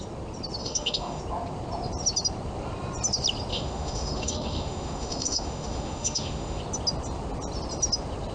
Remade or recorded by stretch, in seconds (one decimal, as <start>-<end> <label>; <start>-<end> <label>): 0.0-0.6 recorded; 0.6-1.2 remade; 1.2-3.5 recorded; 3.5-6.6 remade; 6.6-8.3 recorded